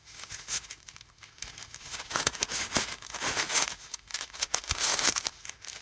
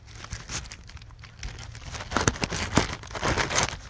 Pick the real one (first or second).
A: second